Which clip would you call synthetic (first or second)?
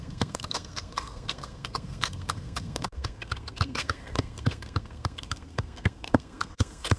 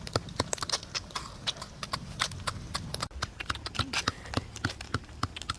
first